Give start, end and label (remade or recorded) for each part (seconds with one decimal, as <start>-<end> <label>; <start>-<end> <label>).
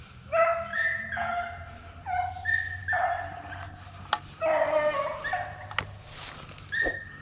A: 0.0-0.7 recorded; 0.7-1.3 remade; 1.3-7.2 recorded